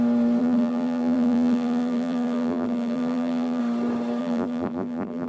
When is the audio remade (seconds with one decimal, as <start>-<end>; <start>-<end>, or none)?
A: 0.4-3.6; 4.2-5.3